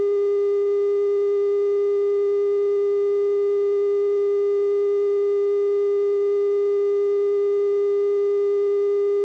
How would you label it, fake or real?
real